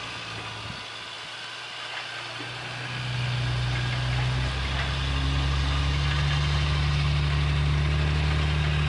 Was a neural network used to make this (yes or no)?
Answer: no